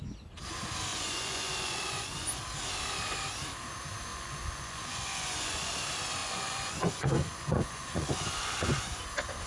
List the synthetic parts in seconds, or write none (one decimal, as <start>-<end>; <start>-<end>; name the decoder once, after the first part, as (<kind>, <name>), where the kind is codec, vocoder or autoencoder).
0.9-2.4 (vocoder, Vocos); 4.1-5.7; 6.2-9.0

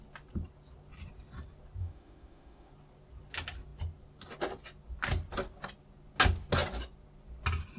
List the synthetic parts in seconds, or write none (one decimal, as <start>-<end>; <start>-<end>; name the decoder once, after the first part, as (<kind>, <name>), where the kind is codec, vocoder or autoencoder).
1.8-2.7 (autoencoder, DAC-VAE)

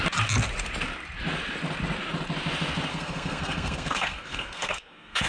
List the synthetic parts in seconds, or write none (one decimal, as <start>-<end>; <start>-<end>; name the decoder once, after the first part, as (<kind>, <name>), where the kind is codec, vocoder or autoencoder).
2.9-5.3 (codec, SNAC)

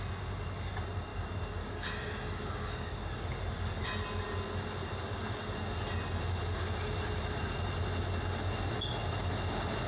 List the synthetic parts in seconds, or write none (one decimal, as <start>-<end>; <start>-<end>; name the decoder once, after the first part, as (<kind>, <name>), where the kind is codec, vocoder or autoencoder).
1.1-3.8 (codec, DAC)

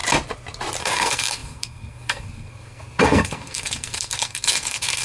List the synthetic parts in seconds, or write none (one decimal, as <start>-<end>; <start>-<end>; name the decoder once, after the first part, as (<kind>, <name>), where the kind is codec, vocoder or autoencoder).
0.8-5.0 (codec, SNAC)

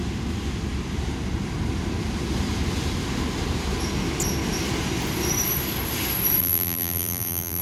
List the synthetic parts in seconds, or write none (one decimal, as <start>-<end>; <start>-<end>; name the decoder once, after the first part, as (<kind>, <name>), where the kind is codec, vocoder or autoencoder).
6.4-7.6 (vocoder, BigVGAN v2)